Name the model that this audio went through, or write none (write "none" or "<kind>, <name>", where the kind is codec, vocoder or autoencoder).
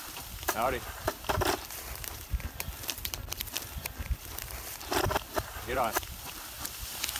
vocoder, BigVGAN v2